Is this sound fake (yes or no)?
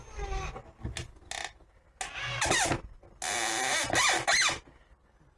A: no